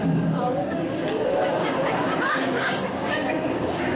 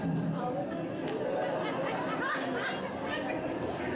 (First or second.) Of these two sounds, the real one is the second